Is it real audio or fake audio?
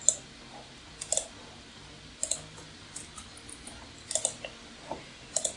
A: real